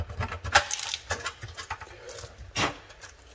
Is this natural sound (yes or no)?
yes